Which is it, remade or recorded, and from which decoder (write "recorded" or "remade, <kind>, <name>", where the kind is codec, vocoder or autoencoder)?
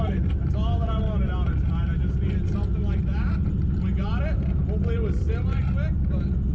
recorded